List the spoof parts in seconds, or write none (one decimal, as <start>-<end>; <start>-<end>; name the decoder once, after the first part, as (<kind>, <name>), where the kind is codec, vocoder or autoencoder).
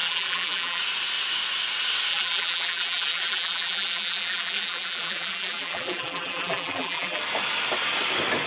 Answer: 0.0-0.8 (vocoder, BigVGAN v2); 2.1-7.2